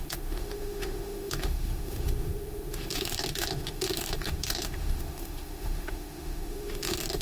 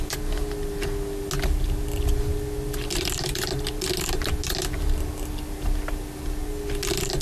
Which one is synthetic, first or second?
first